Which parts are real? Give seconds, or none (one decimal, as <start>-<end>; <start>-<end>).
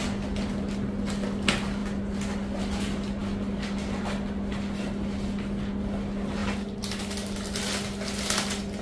0.0-8.8